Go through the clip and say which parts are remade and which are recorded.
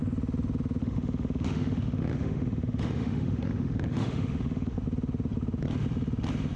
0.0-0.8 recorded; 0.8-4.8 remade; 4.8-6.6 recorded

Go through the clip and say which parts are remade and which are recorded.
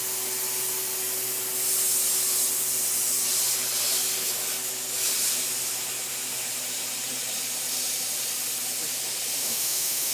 0.0-9.4 recorded; 9.4-10.1 remade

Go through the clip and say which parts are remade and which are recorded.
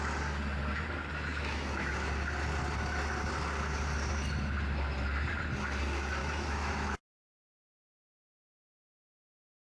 0.0-1.3 recorded; 1.3-1.9 remade; 1.9-6.2 recorded; 6.2-7.9 remade; 7.9-9.7 recorded